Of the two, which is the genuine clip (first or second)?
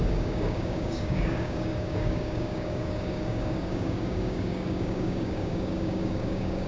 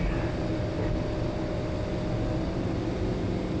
second